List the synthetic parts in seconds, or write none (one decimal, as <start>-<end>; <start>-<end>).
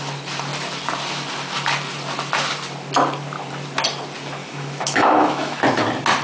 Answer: 4.4-5.6